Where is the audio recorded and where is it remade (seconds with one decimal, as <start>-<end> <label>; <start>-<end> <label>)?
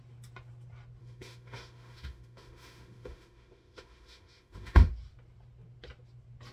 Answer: 0.0-1.0 recorded; 1.0-4.9 remade; 4.9-6.5 recorded